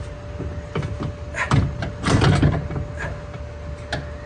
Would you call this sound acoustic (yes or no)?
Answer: yes